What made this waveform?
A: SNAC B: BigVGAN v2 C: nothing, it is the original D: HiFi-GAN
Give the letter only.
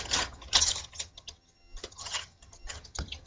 D